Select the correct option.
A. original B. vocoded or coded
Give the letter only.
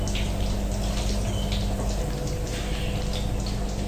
A